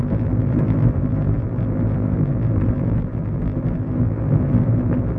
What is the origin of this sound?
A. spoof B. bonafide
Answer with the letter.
A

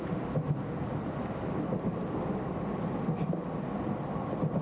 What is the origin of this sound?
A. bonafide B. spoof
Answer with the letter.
A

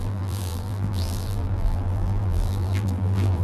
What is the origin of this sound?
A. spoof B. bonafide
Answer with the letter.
A